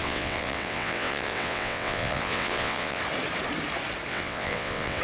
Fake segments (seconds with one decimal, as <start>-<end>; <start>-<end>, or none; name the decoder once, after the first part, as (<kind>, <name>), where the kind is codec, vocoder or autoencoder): 0.0-3.0 (vocoder, WaveNeXt); 4.1-5.0